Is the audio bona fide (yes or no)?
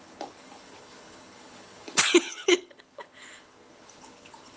no